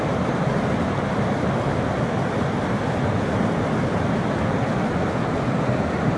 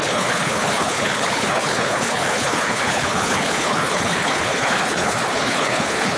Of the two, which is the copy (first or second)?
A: second